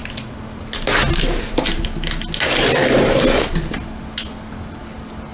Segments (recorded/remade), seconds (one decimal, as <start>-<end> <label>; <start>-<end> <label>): 0.0-5.3 recorded

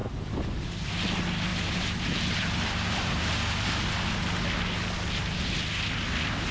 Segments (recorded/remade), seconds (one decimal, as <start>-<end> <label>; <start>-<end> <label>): 0.0-0.8 remade; 0.8-1.5 recorded; 1.5-3.3 remade; 3.3-6.5 recorded

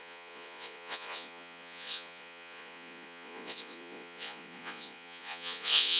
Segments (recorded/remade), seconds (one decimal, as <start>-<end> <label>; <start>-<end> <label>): 0.0-6.0 remade

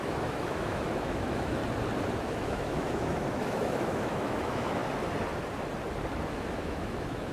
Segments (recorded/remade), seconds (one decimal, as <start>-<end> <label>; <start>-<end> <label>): 0.0-1.6 remade; 1.6-2.2 recorded; 2.2-4.8 remade; 4.8-6.3 recorded; 6.3-7.3 remade

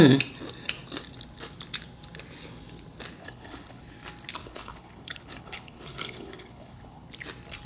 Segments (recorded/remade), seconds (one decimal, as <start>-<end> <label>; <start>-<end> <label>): 0.0-3.2 recorded; 3.2-3.8 remade; 3.8-4.4 recorded; 4.4-7.1 remade; 7.1-7.7 recorded

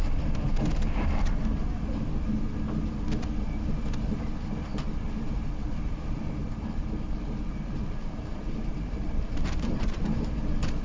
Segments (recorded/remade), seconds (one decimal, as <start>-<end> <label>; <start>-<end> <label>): 0.0-6.4 recorded; 6.4-10.0 remade; 10.0-10.8 recorded

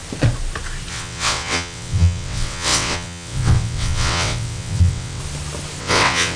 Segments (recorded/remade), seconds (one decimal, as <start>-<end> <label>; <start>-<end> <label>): 0.0-0.9 recorded; 0.9-5.2 remade; 5.2-5.8 recorded; 5.8-6.4 remade